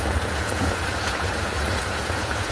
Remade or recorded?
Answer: remade